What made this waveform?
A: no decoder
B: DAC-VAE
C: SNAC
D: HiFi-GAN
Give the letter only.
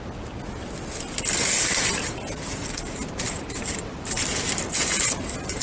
A